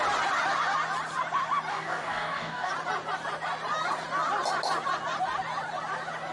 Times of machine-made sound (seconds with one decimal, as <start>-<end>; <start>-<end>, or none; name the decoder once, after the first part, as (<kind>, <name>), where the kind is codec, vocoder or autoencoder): 1.7-2.7 (codec, DAC)